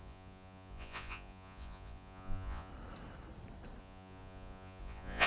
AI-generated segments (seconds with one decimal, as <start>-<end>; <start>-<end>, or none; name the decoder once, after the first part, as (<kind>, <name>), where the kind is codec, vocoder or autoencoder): 0.0-2.7 (vocoder, Vocos); 3.8-5.3